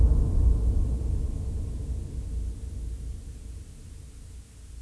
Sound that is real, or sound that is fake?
real